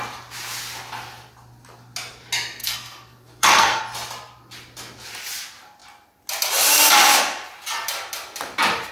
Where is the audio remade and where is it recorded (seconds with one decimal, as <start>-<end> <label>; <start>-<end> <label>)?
0.0-2.6 recorded; 2.6-3.8 remade; 3.8-8.9 recorded